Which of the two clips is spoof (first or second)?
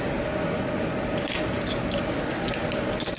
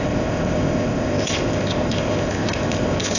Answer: second